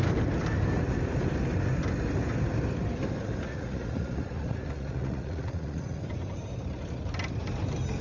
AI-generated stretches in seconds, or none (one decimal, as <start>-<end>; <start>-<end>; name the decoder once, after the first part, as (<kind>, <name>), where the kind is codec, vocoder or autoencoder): 3.5-6.0 (vocoder, Vocos)